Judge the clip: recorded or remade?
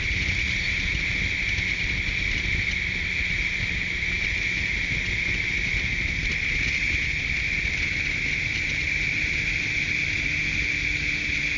recorded